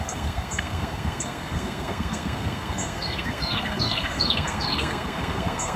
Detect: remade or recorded remade